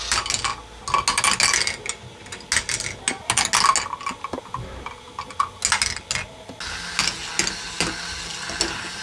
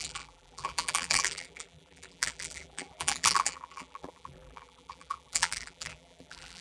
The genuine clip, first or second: first